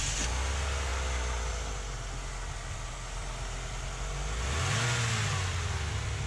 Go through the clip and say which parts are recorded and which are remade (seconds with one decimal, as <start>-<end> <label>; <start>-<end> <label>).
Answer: 0.0-6.3 recorded